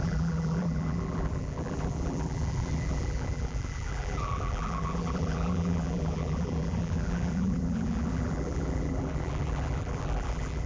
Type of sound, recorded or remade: remade